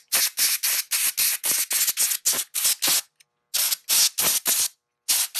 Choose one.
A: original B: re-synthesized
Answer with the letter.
A